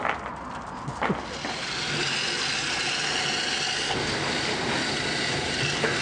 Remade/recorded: recorded